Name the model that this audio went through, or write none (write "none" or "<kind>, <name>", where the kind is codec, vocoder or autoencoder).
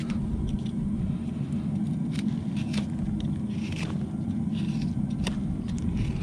none